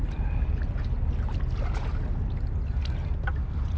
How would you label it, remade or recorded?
recorded